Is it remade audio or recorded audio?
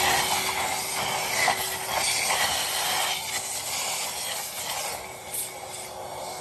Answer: recorded